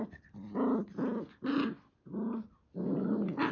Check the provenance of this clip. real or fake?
real